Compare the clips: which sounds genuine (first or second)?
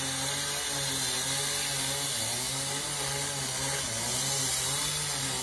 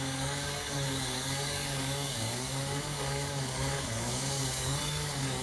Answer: first